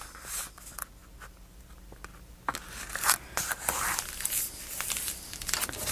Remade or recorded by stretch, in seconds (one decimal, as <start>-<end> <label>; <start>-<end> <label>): 0.0-5.9 recorded